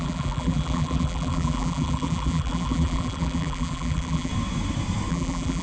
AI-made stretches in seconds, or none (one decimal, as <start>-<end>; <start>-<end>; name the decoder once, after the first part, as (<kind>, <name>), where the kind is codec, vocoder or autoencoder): 0.0-4.3 (vocoder, BigVGAN v2); 5.1-5.6